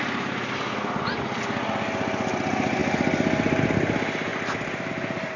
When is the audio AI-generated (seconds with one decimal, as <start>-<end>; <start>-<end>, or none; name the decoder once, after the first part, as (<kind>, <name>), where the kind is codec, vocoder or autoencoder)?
none